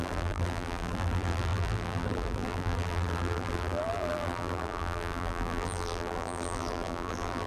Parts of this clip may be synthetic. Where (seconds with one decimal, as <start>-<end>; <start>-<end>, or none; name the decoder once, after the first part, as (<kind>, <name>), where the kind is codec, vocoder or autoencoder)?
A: 0.0-7.5 (vocoder, BigVGAN v2)